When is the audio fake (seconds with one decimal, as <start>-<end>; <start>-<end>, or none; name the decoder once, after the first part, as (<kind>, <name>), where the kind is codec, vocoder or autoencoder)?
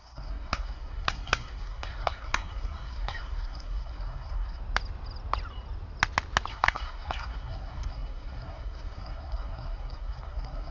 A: 0.0-4.6 (codec, SNAC); 6.5-10.7